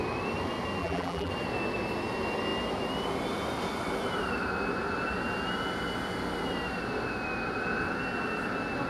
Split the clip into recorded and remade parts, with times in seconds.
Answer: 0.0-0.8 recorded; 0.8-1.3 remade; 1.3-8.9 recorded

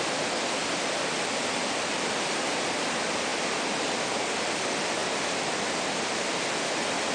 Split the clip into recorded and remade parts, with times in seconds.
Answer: 0.0-0.6 recorded; 0.6-2.5 remade; 2.5-5.0 recorded; 5.0-5.7 remade; 5.7-7.1 recorded

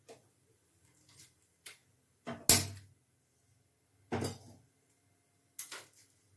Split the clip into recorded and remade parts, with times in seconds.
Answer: 0.0-1.8 remade; 1.8-5.6 recorded; 5.6-6.4 remade

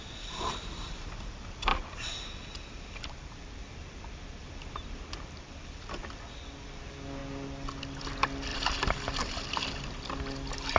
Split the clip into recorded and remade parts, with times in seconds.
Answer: 0.0-8.5 recorded; 8.5-10.1 remade; 10.1-10.8 recorded